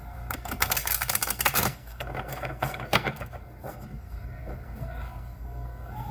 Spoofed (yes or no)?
yes